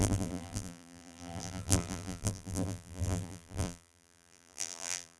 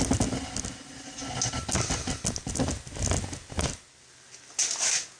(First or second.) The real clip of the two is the second